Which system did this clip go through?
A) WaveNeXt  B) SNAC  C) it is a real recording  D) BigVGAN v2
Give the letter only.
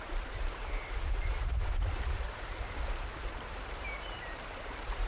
D